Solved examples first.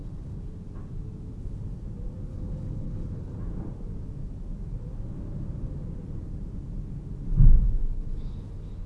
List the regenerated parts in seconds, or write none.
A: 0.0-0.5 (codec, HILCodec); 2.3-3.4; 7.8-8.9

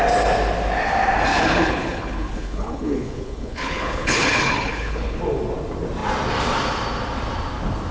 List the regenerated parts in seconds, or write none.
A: 1.3-5.2 (codec, HILCodec)

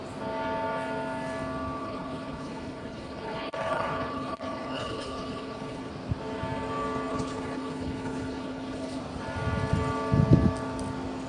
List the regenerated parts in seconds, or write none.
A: 1.8-5.9 (codec, HILCodec); 7.1-9.0

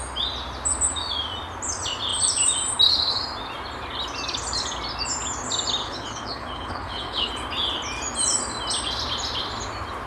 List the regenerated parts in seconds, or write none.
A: 5.8-7.3 (codec, HILCodec)

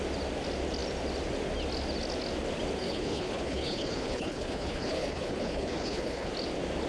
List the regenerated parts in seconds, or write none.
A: 2.8-6.3 (codec, HILCodec)